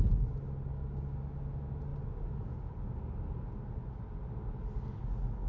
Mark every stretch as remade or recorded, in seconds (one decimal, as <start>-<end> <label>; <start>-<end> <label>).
0.0-0.7 recorded; 0.7-1.2 remade; 1.2-5.5 recorded